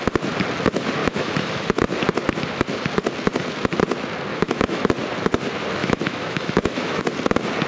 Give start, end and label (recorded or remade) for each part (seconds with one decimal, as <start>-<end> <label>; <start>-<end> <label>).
0.0-1.0 recorded; 1.0-1.8 remade; 1.8-4.3 recorded; 4.3-4.9 remade; 4.9-5.8 recorded; 5.8-7.0 remade; 7.0-7.7 recorded